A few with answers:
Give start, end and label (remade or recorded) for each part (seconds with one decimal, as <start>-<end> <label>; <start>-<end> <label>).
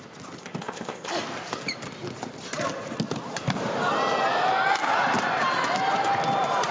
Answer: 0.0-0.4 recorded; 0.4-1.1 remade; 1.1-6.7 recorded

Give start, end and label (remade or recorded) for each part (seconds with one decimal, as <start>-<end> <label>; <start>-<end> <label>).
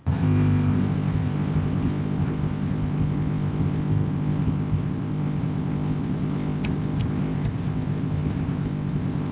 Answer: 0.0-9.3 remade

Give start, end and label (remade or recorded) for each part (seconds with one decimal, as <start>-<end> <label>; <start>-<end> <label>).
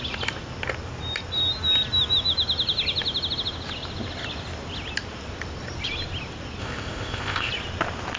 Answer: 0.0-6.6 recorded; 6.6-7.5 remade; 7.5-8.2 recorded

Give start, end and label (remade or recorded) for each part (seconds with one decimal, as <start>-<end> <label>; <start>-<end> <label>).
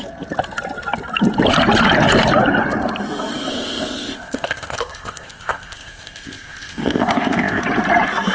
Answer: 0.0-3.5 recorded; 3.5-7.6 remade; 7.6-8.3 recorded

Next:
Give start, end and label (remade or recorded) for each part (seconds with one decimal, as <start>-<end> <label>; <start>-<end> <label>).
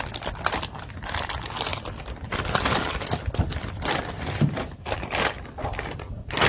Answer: 0.0-6.5 recorded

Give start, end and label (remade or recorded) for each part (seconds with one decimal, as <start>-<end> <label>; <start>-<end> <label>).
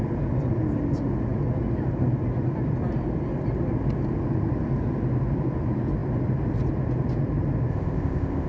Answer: 0.0-7.7 recorded; 7.7-8.5 remade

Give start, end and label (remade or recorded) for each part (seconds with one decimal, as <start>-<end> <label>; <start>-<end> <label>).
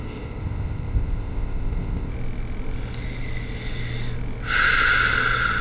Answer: 0.0-2.1 remade; 2.1-5.6 recorded